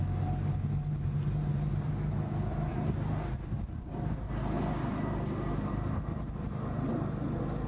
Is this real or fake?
real